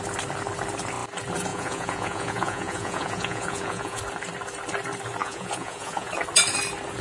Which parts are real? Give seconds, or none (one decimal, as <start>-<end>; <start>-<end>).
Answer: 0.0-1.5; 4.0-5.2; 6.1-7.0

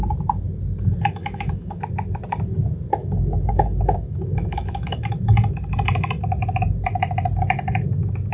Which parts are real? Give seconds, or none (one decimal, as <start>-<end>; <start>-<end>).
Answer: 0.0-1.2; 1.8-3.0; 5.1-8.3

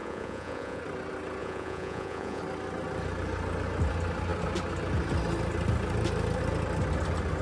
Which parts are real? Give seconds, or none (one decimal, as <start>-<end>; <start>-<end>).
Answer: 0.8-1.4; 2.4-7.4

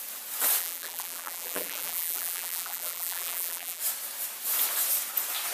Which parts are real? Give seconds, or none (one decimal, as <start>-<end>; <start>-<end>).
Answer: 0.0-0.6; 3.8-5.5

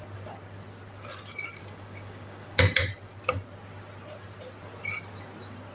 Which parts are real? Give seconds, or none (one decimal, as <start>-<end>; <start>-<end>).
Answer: 0.0-1.6; 2.6-5.7

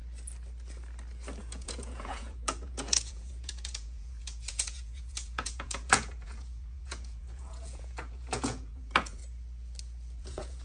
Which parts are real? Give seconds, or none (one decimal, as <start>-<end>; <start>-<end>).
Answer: 0.0-1.4; 9.2-10.2

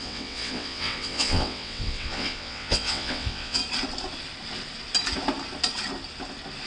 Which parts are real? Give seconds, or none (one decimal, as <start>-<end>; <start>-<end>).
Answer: 3.6-6.7

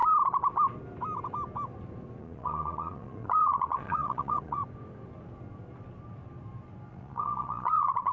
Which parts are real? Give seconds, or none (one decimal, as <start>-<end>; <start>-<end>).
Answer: 0.0-2.2; 4.6-6.9